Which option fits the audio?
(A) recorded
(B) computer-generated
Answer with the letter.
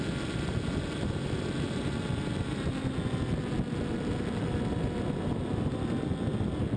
A